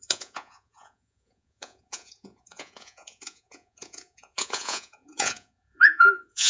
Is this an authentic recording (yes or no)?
no